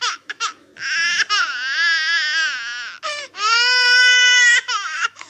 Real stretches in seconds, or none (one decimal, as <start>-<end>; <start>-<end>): 0.7-3.1

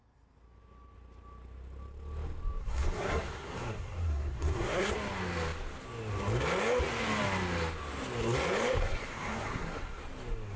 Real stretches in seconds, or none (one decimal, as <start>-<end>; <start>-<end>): 0.0-2.6; 4.9-8.8; 10.0-10.6